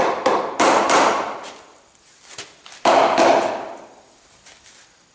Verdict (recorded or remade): recorded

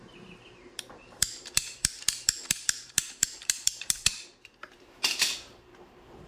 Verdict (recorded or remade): remade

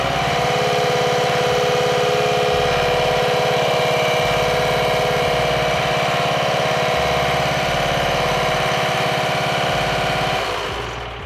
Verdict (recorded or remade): recorded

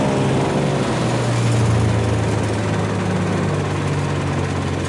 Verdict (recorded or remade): recorded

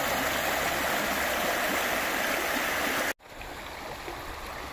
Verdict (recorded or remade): recorded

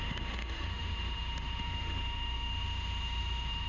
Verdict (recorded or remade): remade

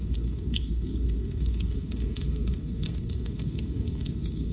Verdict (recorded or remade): remade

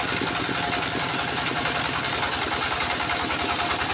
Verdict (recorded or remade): recorded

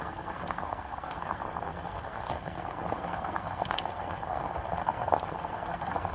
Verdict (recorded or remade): remade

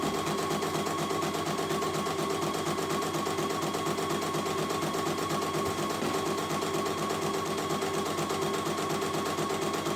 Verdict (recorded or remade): recorded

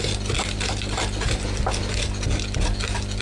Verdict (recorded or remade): recorded